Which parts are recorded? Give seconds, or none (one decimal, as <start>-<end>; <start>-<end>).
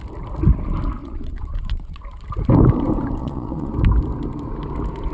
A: 0.0-1.0; 2.0-3.2; 3.7-5.1